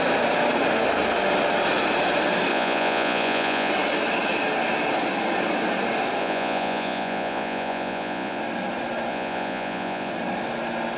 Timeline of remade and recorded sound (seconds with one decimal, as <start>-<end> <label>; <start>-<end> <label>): 0.0-2.5 recorded; 2.5-3.7 remade; 3.7-6.2 recorded; 6.2-8.4 remade; 8.4-9.1 recorded; 9.1-10.1 remade; 10.1-11.0 recorded